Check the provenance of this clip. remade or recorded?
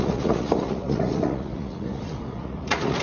remade